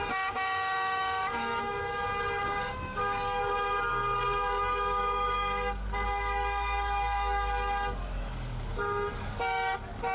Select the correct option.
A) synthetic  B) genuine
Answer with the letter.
A